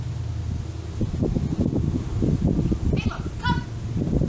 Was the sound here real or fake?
real